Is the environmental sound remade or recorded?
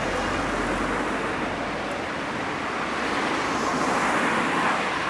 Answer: recorded